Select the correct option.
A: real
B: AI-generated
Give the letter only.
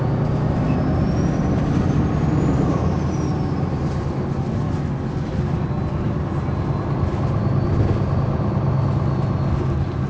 A